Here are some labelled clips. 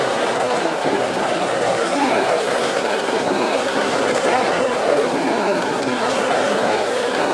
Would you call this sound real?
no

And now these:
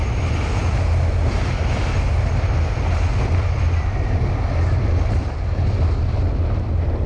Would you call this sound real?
yes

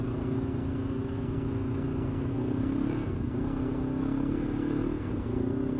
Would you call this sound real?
no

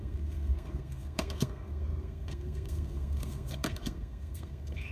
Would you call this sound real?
no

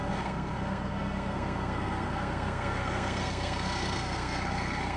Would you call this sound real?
no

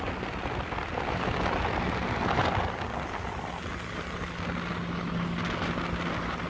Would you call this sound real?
yes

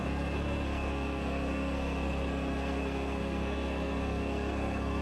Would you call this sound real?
no